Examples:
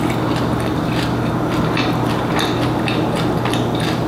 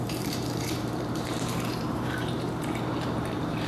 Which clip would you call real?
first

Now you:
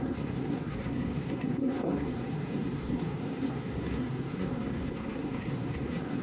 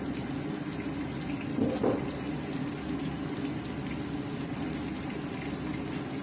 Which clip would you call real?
second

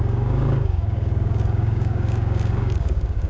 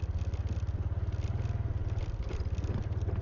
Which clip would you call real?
second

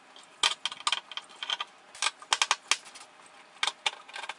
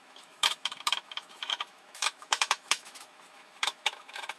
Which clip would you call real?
first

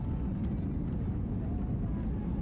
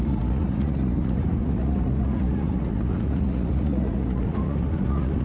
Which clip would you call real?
first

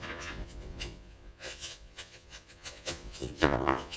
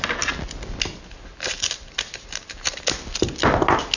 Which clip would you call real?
second